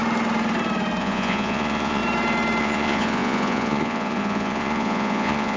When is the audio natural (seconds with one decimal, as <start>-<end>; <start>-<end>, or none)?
0.0-1.0; 2.0-2.6

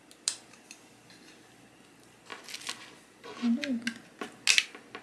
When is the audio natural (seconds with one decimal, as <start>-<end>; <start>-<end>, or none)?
0.0-5.0

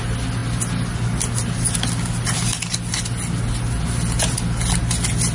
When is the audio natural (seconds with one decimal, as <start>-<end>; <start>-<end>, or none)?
0.0-5.3

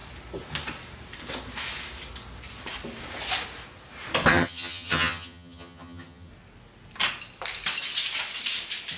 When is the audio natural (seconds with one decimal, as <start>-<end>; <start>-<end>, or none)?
0.0-4.3; 6.3-9.0

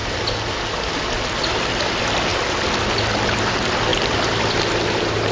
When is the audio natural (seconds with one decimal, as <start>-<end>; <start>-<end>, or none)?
0.0-2.3; 2.9-3.9; 4.6-5.3

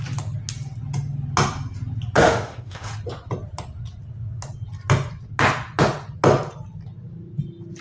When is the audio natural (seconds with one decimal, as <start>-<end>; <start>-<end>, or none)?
0.0-2.2; 2.9-7.8

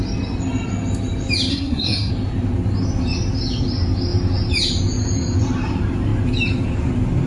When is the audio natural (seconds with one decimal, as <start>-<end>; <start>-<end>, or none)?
0.0-1.5; 2.1-7.3